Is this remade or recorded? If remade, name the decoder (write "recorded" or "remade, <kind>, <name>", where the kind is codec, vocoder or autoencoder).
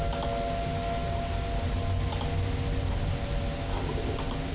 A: recorded